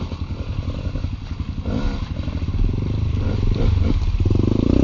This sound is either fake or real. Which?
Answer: real